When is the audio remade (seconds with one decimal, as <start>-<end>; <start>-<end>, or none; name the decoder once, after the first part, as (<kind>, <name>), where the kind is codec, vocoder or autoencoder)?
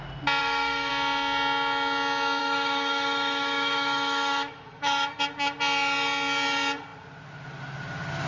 0.4-0.9 (autoencoder, DAC-VAE); 2.4-5.2